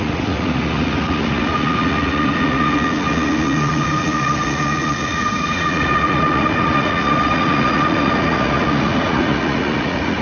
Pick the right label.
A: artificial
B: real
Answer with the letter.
A